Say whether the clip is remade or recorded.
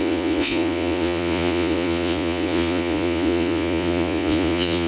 remade